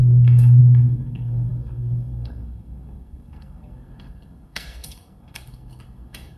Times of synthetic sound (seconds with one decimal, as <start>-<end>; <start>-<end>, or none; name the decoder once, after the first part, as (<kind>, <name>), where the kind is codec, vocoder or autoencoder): 0.0-6.4 (codec, SNAC)